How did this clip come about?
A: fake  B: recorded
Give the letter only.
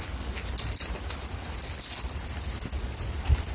B